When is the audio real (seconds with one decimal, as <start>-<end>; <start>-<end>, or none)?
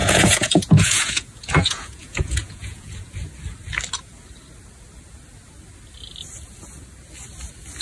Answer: 2.9-7.8